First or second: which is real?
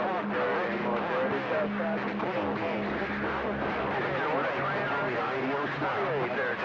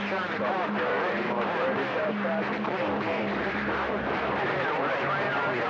first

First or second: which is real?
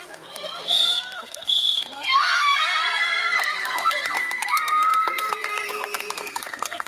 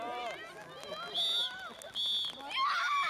second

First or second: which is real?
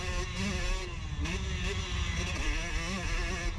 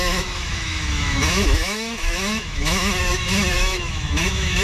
first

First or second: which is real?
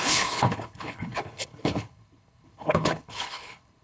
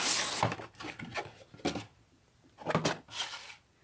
second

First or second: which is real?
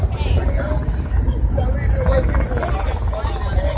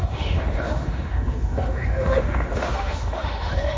first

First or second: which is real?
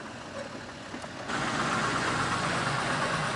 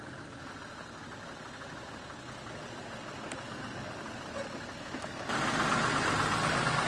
second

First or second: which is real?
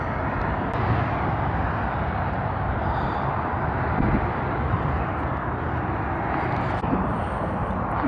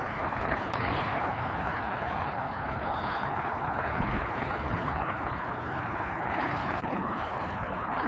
first